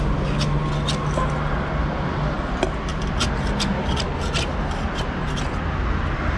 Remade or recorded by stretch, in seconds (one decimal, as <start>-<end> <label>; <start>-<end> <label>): 0.0-1.8 recorded; 1.8-2.4 remade; 2.4-6.4 recorded